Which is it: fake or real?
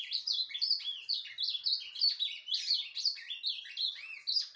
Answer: real